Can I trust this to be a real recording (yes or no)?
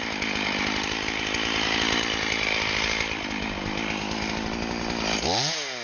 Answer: yes